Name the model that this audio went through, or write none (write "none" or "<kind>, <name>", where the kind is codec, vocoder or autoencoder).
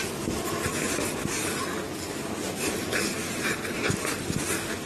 none